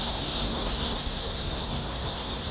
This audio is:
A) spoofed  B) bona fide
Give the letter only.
A